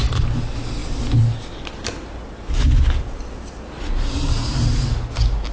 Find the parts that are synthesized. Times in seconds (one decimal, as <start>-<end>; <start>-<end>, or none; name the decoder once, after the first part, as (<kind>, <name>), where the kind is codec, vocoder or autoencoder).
none